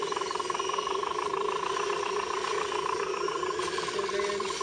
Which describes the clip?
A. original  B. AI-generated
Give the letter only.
A